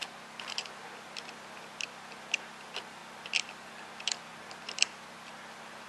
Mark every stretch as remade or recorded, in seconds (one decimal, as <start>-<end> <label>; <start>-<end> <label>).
0.0-5.9 recorded